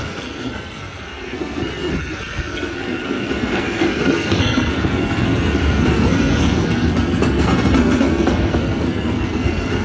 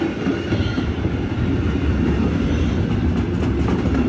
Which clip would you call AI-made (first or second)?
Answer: first